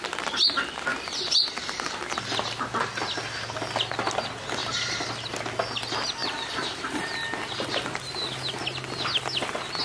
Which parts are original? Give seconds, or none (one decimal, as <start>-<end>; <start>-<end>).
0.0-0.9; 2.0-4.6; 5.1-6.2; 7.1-9.8